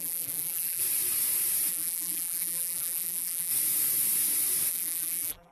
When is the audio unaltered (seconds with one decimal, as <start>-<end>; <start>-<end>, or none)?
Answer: 0.8-1.7; 3.5-4.7